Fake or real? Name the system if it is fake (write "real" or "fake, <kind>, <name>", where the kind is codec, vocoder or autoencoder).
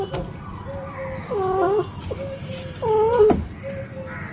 real